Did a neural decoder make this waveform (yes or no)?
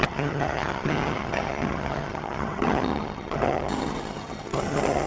yes